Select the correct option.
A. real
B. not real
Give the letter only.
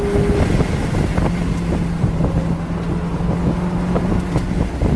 A